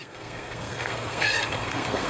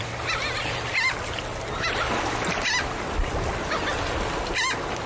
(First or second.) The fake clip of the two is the first